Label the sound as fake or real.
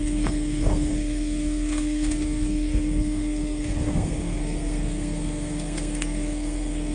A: fake